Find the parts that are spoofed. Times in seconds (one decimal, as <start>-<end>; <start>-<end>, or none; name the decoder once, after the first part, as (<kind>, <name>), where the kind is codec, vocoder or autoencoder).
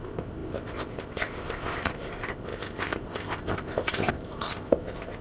0.0-5.2 (codec, ZipCodec)